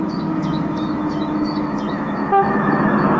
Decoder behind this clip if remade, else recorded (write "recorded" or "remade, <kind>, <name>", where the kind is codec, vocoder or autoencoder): remade, autoencoder, DAC-VAE